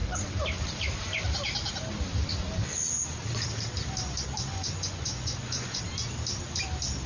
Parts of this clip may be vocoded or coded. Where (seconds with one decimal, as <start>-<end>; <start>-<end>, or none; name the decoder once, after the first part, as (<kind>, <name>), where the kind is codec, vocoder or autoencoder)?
4.5-5.8 (vocoder, Vocos)